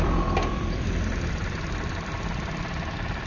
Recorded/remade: remade